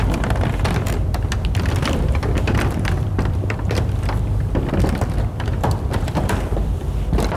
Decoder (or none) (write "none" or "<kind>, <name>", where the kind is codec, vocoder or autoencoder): vocoder, BigVGAN v2